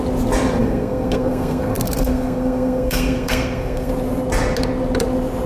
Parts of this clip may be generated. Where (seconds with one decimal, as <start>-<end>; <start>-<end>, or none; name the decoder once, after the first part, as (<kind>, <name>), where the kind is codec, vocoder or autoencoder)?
0.6-3.9 (codec, SNAC)